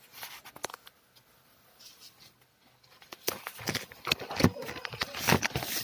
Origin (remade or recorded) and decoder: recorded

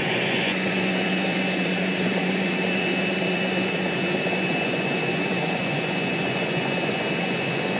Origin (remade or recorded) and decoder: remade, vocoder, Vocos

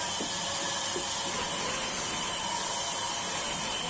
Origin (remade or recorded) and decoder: recorded